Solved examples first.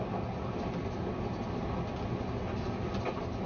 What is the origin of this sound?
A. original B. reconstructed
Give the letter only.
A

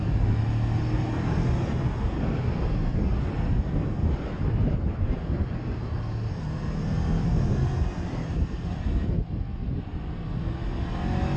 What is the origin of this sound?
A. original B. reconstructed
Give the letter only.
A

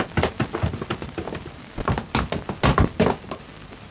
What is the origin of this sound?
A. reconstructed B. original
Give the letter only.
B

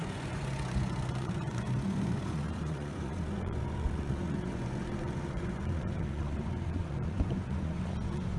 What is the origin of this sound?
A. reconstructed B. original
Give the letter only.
A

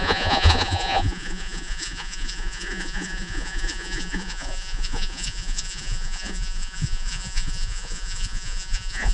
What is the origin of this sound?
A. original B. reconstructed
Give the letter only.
B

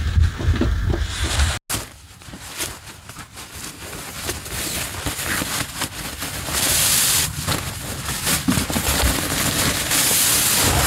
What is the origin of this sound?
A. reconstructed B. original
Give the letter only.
B